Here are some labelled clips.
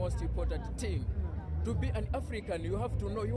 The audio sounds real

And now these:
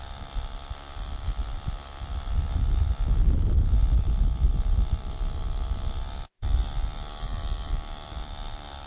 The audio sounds real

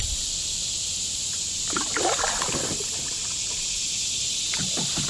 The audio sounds real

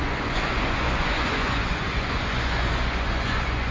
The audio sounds fake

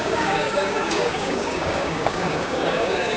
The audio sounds fake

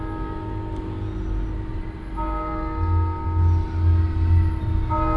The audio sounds real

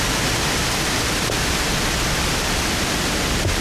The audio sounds real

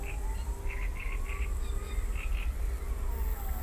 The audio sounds real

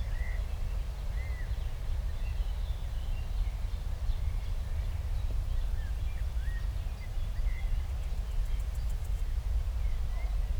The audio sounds real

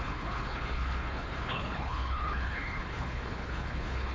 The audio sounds fake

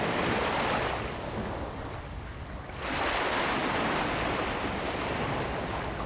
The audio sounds real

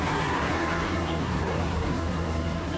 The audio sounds fake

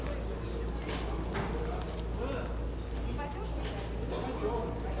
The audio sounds real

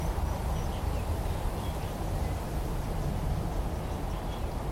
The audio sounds real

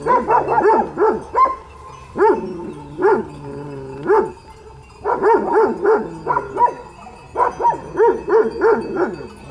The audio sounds real